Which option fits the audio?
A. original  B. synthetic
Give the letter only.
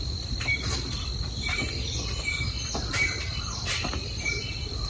A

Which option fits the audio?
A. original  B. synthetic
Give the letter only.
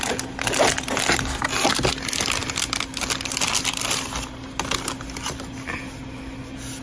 A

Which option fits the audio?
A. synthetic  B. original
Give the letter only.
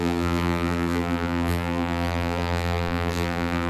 A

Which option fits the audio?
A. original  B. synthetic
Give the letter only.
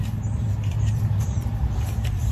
B